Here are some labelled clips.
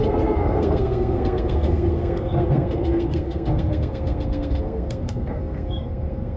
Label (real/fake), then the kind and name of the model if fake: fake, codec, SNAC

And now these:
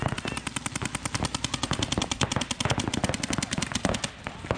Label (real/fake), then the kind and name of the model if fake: real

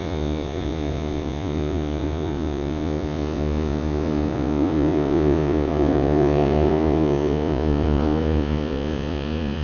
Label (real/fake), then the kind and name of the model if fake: fake, vocoder, Vocos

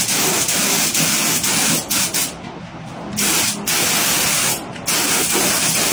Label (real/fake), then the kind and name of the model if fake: real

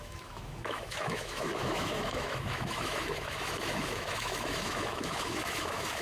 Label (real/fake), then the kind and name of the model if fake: fake, autoencoder, DAC-VAE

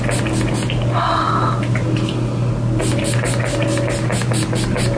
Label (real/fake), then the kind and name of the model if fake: real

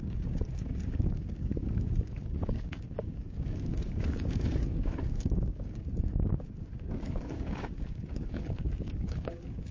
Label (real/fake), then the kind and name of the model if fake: fake, codec, DAC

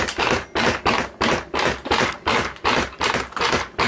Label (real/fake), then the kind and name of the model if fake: real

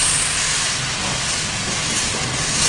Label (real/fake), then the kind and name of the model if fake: real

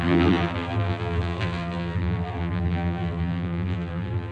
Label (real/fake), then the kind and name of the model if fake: fake, vocoder, BigVGAN v2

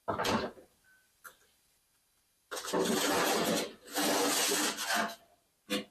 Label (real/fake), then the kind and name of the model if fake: real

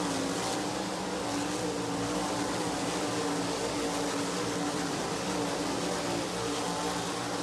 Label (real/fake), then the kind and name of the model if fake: real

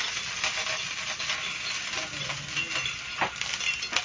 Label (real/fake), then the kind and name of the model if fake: real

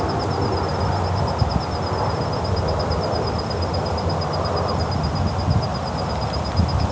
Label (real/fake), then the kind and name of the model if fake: real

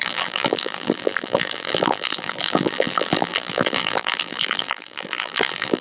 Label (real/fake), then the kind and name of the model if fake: fake, vocoder, BigVGAN v2